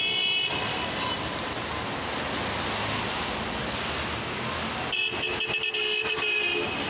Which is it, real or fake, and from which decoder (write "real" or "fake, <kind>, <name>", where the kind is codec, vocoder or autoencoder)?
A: real